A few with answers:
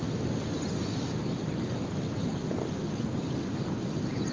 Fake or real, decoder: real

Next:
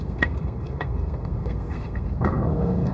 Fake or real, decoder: fake, codec, SNAC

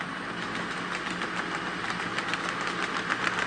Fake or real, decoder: real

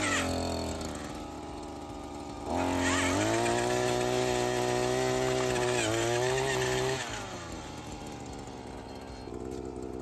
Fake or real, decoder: real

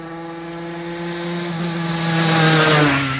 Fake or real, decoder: real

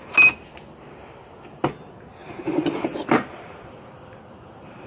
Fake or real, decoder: real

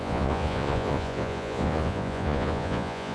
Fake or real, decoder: fake, vocoder, Vocos